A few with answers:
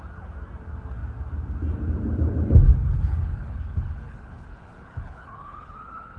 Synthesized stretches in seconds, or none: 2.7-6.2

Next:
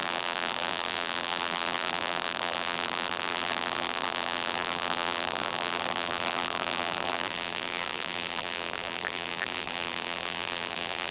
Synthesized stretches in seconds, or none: 0.0-11.1

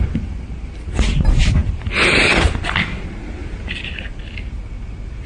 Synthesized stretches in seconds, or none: none

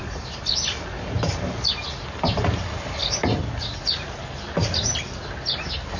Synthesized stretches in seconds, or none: none

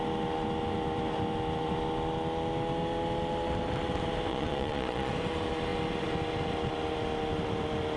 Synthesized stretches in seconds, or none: 4.3-5.1

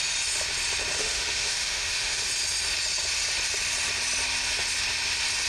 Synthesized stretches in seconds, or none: 1.0-2.2

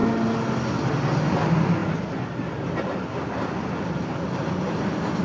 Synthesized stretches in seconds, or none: none